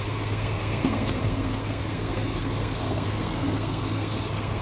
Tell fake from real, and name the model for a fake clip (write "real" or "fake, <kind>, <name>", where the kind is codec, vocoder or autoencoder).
fake, codec, SNAC